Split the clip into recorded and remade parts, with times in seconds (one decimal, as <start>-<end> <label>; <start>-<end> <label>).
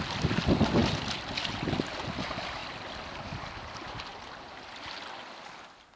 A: 0.0-6.0 recorded